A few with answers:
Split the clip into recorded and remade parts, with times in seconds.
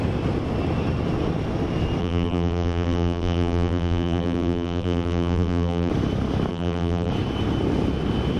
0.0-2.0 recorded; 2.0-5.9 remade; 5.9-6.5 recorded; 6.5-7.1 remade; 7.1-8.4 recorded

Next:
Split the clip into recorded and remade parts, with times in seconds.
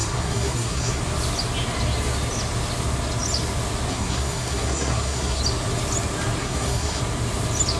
0.0-1.0 remade; 1.0-3.9 recorded; 3.9-5.4 remade; 5.4-6.4 recorded; 6.4-7.0 remade; 7.0-7.8 recorded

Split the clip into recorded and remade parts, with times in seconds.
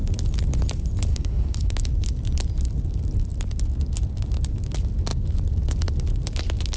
0.0-1.1 recorded; 1.1-1.7 remade; 1.7-6.8 recorded